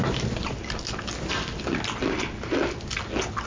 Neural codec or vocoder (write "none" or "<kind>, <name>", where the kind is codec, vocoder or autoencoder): none